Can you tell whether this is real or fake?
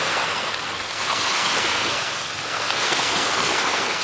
fake